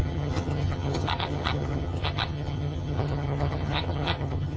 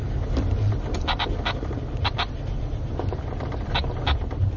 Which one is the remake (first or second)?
first